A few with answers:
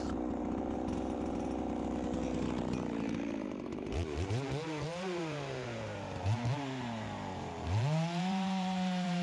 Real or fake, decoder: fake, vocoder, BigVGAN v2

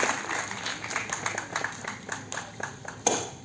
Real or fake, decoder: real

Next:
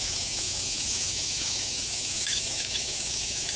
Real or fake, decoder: fake, autoencoder, DAC-VAE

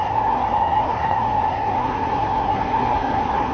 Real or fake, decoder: fake, codec, SNAC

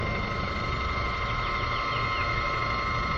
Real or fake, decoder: real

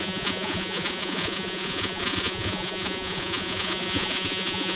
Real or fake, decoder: fake, vocoder, Vocos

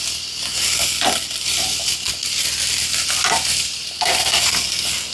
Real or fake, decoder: real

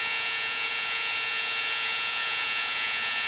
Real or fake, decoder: fake, vocoder, Vocos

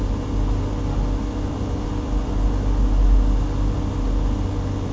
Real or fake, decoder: real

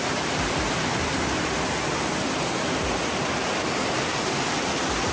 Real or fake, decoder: real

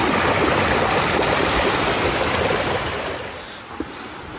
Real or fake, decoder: real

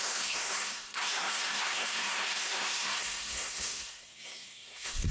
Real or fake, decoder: fake, codec, SNAC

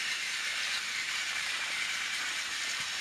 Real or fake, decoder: fake, vocoder, BigVGAN v2